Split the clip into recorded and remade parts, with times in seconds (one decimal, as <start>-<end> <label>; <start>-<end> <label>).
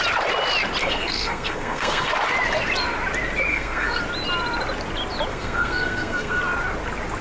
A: 0.0-0.8 recorded; 0.8-2.1 remade; 2.1-3.5 recorded; 3.5-4.0 remade; 4.0-5.3 recorded; 5.3-6.4 remade; 6.4-7.2 recorded